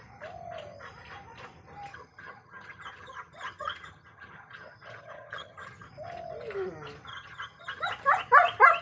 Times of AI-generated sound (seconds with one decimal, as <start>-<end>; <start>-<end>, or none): 1.9-5.9; 7.1-7.8